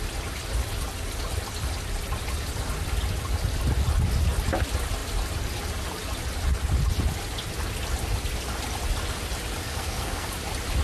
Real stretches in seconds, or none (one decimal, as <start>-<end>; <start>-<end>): 0.0-9.6; 10.3-10.8